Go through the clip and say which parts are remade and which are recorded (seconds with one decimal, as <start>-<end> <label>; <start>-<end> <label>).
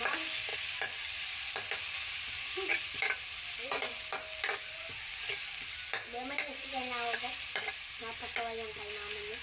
0.0-0.5 recorded; 0.5-3.5 remade; 3.5-9.4 recorded